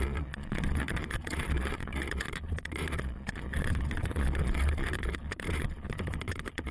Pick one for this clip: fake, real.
fake